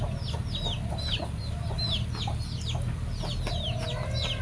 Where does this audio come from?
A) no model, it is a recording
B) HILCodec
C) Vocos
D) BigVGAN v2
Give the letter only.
A